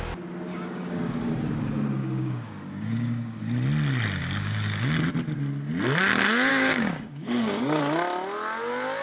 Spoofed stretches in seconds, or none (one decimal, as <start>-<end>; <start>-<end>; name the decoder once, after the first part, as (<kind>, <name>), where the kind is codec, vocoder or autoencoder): 0.5-1.3 (codec, DAC); 2.0-3.4; 4.2-5.1; 6.5-7.8